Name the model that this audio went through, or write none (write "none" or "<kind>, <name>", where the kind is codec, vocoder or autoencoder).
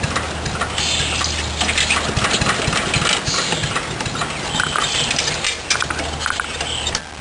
none